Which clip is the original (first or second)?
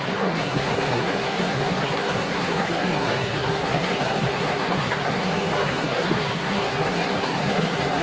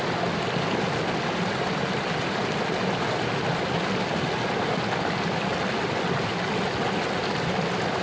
second